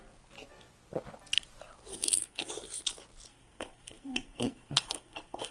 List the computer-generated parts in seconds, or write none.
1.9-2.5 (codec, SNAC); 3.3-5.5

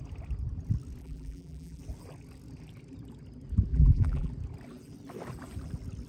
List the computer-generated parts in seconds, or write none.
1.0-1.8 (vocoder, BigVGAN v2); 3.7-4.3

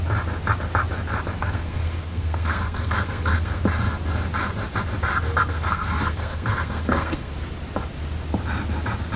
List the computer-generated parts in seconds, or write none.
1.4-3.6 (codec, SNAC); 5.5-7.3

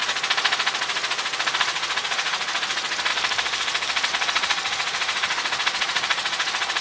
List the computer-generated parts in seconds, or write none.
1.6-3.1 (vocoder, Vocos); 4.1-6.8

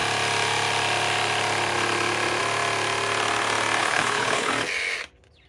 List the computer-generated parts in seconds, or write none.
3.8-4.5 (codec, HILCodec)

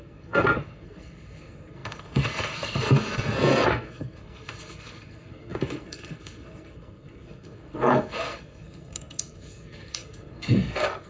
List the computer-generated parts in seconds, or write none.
0.0-11.1 (codec, SNAC)

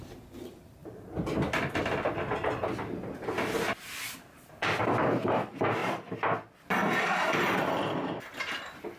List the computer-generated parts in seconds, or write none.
0.0-0.8 (vocoder, BigVGAN v2); 4.8-5.8; 6.7-9.0

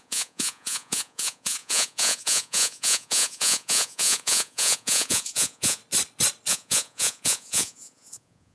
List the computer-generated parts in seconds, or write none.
0.0-5.8 (vocoder, Vocos); 6.5-8.5